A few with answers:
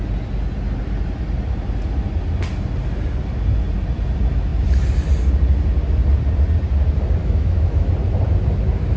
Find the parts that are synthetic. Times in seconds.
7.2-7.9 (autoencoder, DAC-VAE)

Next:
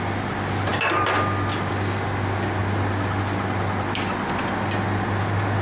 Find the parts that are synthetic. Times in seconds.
none